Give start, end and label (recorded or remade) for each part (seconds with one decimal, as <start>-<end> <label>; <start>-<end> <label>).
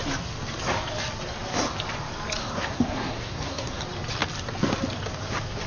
0.0-2.4 recorded; 2.4-3.8 remade; 3.8-5.7 recorded